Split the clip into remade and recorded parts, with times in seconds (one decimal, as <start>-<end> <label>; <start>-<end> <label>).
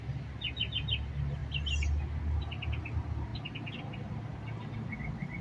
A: 0.0-3.3 remade; 3.3-3.9 recorded; 3.9-5.4 remade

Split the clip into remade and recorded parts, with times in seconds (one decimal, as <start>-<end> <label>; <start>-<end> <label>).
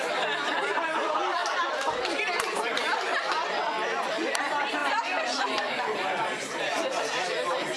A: 0.0-1.4 recorded; 1.4-1.9 remade; 1.9-4.8 recorded; 4.8-6.6 remade; 6.6-7.8 recorded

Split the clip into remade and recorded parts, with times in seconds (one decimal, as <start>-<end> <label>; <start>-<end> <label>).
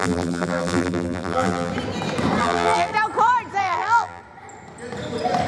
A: 0.0-1.7 remade; 1.7-2.4 recorded; 2.4-2.9 remade; 2.9-3.6 recorded; 3.6-4.2 remade; 4.2-5.5 recorded